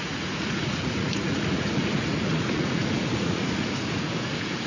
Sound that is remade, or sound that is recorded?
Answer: remade